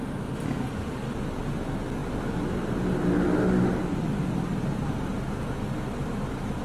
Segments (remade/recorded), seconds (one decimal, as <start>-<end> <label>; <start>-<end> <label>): 0.0-6.6 recorded

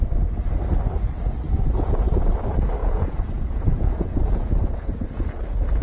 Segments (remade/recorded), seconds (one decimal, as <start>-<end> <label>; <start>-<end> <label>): 0.0-2.8 recorded; 2.8-5.3 remade; 5.3-5.8 recorded

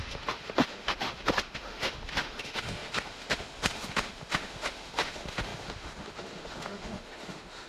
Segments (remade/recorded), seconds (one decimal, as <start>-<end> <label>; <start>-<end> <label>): 0.0-7.7 remade

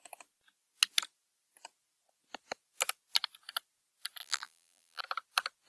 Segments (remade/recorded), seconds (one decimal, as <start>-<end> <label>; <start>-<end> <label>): 0.0-4.2 recorded; 4.2-5.0 remade; 5.0-5.7 recorded

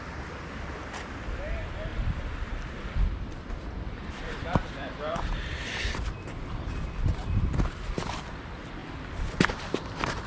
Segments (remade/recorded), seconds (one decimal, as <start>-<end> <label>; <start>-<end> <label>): 0.0-1.9 recorded; 1.9-5.6 remade; 5.6-10.3 recorded

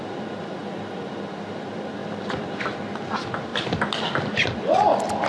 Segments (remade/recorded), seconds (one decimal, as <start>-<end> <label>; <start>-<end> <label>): 0.0-0.6 recorded; 0.6-1.1 remade; 1.1-2.0 recorded; 2.0-2.6 remade; 2.6-5.3 recorded

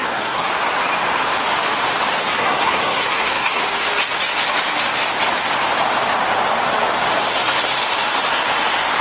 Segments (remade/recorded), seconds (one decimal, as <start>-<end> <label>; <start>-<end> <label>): 0.0-0.5 remade; 0.5-2.2 recorded; 2.2-3.6 remade; 3.6-9.0 recorded

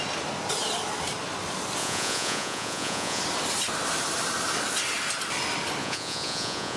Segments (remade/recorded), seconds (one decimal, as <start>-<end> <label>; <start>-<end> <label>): 0.0-1.8 recorded; 1.8-3.2 remade; 3.2-5.8 recorded; 5.8-6.8 remade